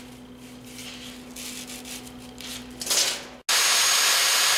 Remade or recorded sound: recorded